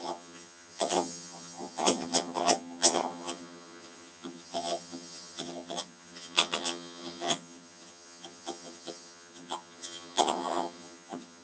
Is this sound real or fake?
fake